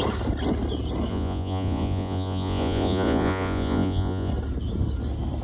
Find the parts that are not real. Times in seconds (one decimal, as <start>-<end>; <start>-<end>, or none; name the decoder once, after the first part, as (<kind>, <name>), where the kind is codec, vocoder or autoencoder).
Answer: 1.1-4.3 (vocoder, Vocos)

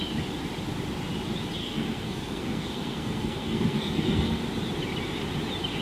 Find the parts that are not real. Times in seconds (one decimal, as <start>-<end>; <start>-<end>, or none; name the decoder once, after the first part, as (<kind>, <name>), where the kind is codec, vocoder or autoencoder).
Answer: 1.6-4.4 (codec, SNAC)

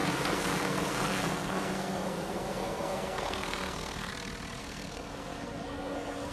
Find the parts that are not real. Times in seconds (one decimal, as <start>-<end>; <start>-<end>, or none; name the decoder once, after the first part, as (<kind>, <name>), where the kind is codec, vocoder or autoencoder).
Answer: 0.0-4.1 (codec, SNAC); 4.6-6.3

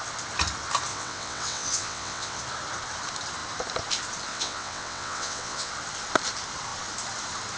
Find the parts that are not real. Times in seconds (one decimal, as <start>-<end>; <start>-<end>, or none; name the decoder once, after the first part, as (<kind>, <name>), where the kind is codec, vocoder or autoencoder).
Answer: 0.9-2.4 (vocoder, WaveNeXt); 4.3-5.7

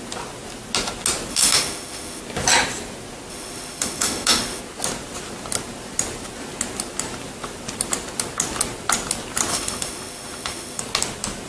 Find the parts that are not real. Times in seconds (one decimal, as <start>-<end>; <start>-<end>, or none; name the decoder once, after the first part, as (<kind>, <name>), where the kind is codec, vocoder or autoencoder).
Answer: 1.3-2.2 (autoencoder, DAC-VAE); 3.3-4.6; 9.5-10.8

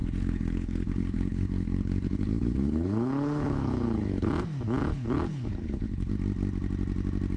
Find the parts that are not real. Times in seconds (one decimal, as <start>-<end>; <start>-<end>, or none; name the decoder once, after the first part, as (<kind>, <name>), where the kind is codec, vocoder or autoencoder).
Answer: 0.0-4.3 (codec, HILCodec); 4.8-6.1

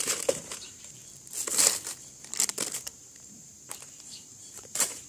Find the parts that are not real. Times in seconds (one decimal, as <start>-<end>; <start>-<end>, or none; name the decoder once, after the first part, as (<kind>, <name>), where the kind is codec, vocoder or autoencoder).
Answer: 0.0-1.0 (vocoder, BigVGAN v2); 2.8-5.1

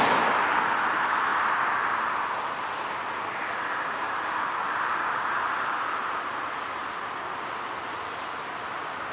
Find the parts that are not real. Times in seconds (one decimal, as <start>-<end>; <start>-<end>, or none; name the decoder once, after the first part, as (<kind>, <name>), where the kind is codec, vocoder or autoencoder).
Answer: none